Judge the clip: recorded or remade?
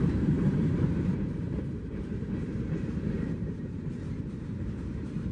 remade